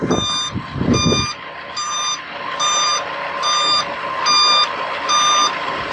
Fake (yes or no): no